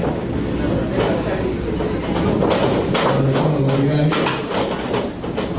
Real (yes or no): yes